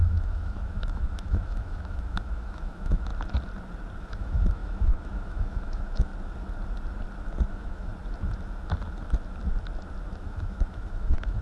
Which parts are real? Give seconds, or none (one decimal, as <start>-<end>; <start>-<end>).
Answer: 3.1-4.0; 6.1-7.5; 7.9-10.2